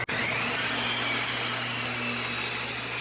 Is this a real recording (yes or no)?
yes